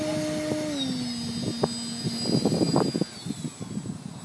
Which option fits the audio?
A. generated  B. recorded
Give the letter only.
B